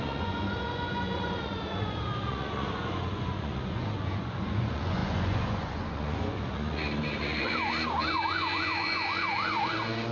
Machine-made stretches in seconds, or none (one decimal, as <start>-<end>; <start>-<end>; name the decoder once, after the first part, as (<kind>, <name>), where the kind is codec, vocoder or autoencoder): 0.0-10.1 (vocoder, Vocos)

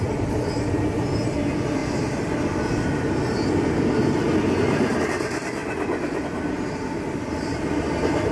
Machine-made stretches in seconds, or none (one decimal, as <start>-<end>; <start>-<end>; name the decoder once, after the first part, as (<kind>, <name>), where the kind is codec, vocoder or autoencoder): none

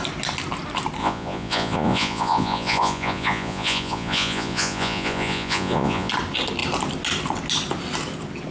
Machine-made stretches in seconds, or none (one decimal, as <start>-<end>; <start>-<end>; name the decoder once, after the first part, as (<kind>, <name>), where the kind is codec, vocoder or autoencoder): 1.0-6.1 (vocoder, Vocos)

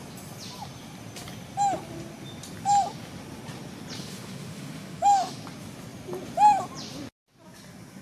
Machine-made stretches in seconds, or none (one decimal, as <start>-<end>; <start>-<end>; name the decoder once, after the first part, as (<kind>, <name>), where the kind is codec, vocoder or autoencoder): 4.0-5.4 (autoencoder, DAC-VAE)

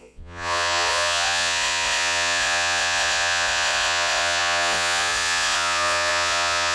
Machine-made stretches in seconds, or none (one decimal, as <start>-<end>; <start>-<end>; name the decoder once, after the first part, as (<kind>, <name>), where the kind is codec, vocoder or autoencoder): 0.0-6.7 (vocoder, Vocos)

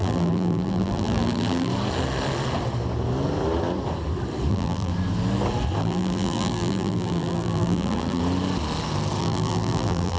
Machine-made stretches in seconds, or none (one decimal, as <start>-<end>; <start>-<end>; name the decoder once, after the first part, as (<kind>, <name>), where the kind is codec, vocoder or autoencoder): 0.0-1.7 (vocoder, BigVGAN v2); 4.5-4.9; 5.8-8.2; 9.2-10.2

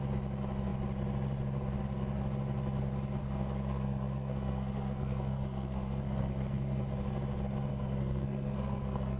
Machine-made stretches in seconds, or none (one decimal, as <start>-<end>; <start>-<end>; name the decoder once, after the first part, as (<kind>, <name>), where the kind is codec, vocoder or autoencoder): 3.2-6.8 (codec, SNAC); 7.7-9.2

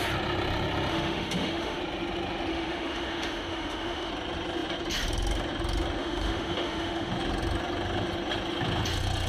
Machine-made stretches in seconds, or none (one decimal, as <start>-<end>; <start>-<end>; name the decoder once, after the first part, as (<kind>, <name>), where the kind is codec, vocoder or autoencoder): 0.9-1.8 (autoencoder, DAC-VAE); 2.5-4.1; 6.0-7.1